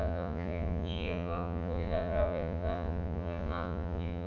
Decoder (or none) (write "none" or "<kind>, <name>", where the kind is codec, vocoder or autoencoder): vocoder, Vocos